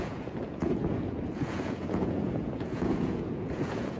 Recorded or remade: remade